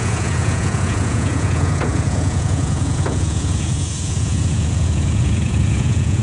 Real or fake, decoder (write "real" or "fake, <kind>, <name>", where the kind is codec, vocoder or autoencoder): fake, vocoder, Vocos